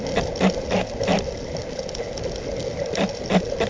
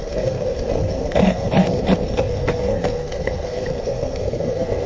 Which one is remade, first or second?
second